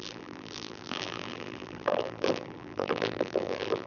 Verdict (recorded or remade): remade